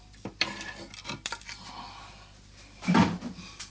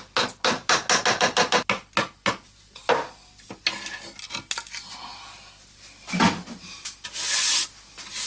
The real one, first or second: second